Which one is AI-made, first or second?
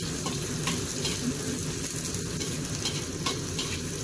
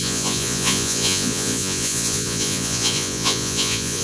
second